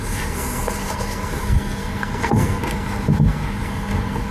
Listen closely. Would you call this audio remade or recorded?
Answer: remade